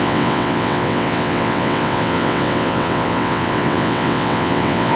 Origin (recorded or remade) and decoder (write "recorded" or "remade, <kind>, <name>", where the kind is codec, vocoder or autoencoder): remade, vocoder, WaveNeXt